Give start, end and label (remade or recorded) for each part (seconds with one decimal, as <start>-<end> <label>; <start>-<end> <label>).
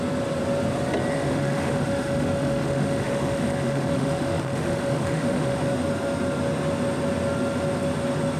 0.0-1.1 recorded; 1.1-5.6 remade; 5.6-8.4 recorded